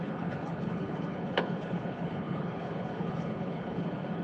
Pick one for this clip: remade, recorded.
remade